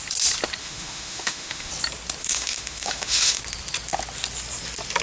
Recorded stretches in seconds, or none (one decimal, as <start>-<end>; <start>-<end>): 0.0-0.6; 1.7-2.2; 3.4-5.0